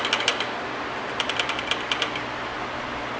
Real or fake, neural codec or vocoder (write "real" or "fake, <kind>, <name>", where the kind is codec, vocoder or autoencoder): real